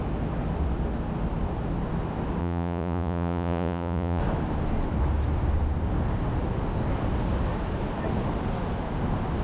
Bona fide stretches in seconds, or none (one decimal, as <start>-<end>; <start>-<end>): 0.0-2.4; 4.2-9.4